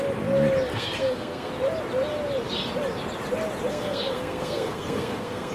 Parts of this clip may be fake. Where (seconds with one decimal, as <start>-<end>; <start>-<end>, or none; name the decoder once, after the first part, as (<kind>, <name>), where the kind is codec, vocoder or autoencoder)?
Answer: 0.7-1.5 (codec, SNAC); 3.7-5.5